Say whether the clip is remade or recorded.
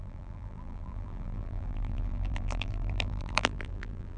remade